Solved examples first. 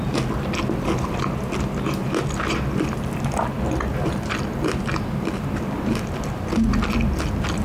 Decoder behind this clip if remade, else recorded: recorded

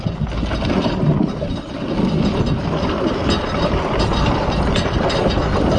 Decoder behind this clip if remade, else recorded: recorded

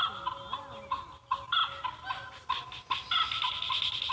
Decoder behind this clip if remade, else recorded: recorded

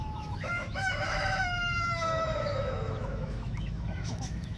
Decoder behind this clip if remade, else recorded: remade, autoencoder, DAC-VAE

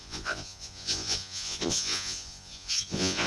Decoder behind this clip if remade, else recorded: remade, vocoder, Vocos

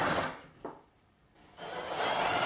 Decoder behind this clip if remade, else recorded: recorded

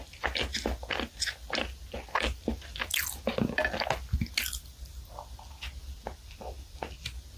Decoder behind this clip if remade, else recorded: recorded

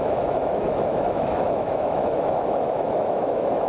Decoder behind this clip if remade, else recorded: remade, autoencoder, DAC-VAE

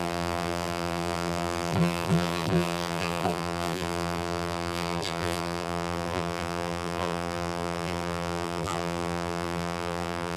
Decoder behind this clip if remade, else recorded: remade, vocoder, BigVGAN v2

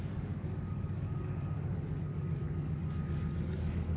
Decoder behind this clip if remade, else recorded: remade, codec, DAC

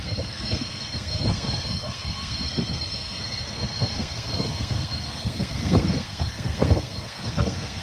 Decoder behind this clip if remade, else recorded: remade, codec, SNAC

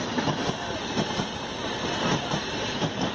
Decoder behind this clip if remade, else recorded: recorded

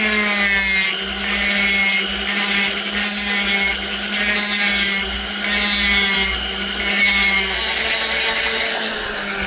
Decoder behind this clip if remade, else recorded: recorded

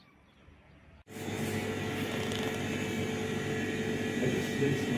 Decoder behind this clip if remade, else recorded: recorded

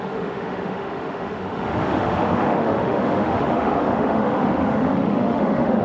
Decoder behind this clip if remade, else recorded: remade, autoencoder, DAC-VAE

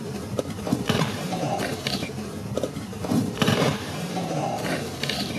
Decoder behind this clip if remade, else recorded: remade, vocoder, BigVGAN v2